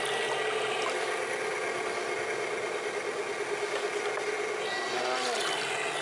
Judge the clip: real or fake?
real